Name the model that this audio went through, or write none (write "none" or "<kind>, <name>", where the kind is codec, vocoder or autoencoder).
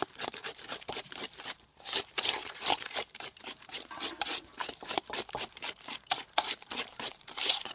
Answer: vocoder, BigVGAN v2